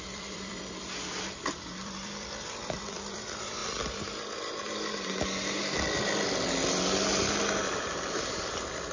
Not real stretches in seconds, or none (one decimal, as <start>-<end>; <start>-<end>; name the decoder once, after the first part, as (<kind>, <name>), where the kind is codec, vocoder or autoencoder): 0.0-3.6 (vocoder, BigVGAN v2); 8.3-8.9